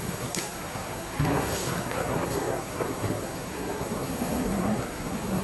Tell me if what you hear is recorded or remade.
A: remade